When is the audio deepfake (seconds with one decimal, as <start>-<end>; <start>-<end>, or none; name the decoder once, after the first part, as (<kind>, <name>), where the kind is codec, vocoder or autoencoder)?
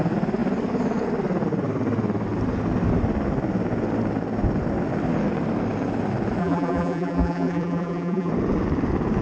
6.4-8.3 (vocoder, BigVGAN v2)